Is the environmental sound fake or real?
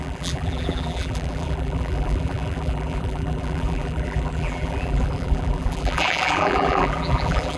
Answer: fake